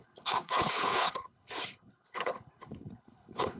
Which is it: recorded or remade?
remade